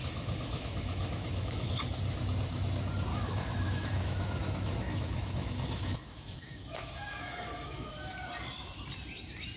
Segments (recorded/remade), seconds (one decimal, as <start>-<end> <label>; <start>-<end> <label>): 0.0-1.7 remade; 1.7-3.1 recorded; 3.1-7.9 remade; 7.9-9.6 recorded